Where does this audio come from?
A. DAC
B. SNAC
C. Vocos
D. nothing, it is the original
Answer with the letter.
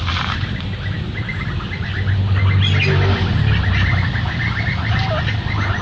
D